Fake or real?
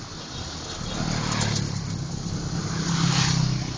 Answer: real